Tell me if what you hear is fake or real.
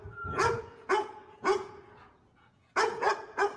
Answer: fake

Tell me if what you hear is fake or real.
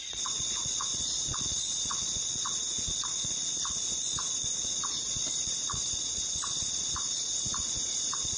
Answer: fake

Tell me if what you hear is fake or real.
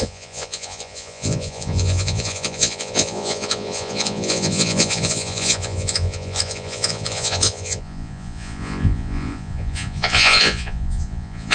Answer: fake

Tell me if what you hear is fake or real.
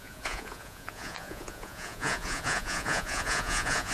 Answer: fake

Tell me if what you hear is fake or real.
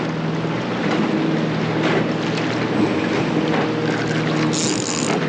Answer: real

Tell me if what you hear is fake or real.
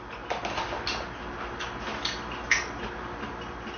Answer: real